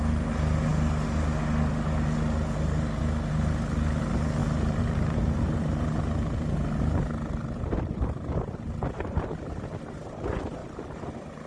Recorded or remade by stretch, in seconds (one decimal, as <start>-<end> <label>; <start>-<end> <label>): 0.0-4.4 recorded; 4.4-9.5 remade; 9.5-11.5 recorded